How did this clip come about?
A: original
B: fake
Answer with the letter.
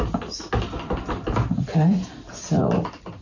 A